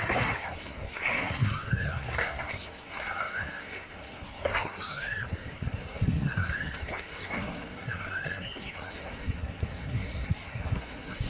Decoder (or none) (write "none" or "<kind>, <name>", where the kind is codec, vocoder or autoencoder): codec, SNAC